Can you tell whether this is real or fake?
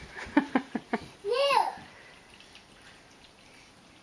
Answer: fake